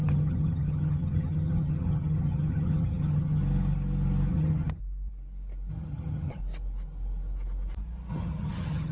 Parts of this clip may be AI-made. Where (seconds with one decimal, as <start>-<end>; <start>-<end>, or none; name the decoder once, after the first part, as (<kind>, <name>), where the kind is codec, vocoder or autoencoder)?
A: 0.0-3.4 (vocoder, HiFi-GAN); 4.3-4.8; 5.7-6.4; 8.1-8.9